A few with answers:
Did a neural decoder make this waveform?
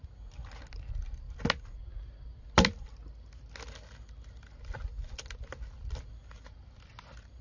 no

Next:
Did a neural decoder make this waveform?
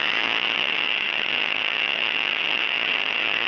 yes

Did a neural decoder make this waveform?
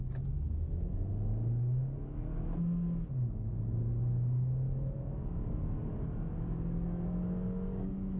no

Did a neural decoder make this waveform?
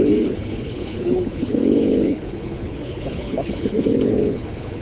yes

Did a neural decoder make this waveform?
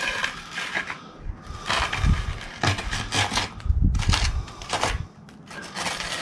no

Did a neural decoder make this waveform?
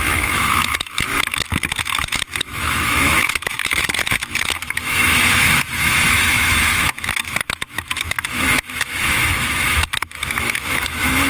yes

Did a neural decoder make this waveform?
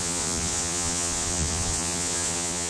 yes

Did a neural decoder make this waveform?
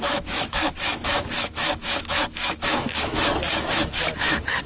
yes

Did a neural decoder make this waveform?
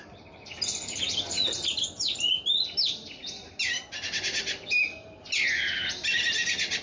no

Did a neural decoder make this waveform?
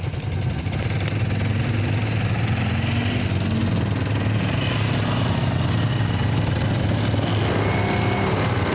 no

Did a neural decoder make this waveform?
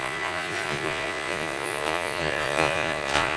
yes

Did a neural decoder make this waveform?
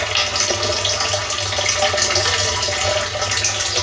no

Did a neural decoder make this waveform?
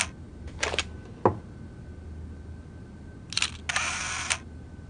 no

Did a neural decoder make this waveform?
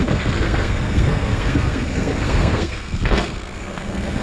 yes